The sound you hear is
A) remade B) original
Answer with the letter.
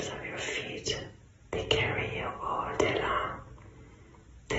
B